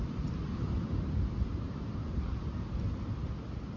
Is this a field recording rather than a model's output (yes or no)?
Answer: yes